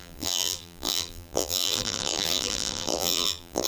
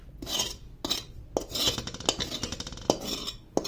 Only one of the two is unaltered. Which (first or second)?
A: second